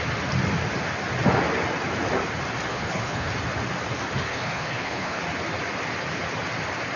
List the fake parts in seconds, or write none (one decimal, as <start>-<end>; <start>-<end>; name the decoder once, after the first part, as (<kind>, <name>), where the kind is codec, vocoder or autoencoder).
2.7-3.3 (codec, HILCodec); 4.3-5.2